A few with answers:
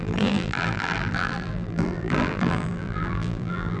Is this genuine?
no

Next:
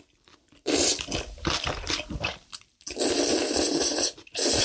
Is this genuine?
yes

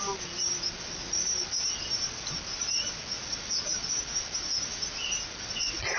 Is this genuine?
yes